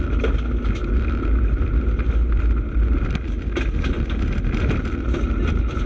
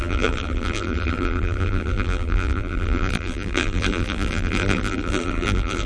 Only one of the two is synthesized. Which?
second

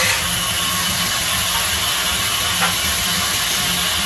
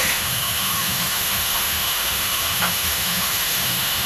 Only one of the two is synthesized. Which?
second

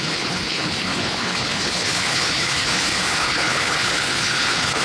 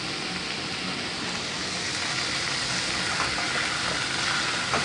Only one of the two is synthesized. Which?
first